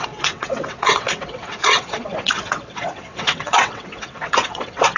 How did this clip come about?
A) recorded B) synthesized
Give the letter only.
B